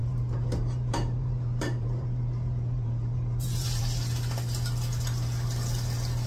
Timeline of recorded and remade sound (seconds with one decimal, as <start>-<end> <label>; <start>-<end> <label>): 0.0-3.8 remade; 3.8-6.3 recorded